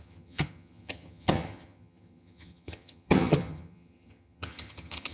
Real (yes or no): no